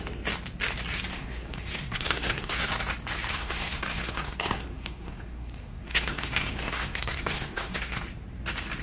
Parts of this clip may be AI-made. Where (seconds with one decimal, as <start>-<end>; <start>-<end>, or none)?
1.1-2.7; 3.3-8.0